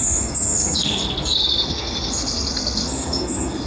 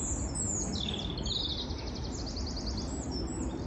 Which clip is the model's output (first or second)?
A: first